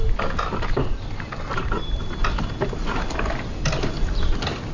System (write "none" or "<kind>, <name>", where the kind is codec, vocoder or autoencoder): none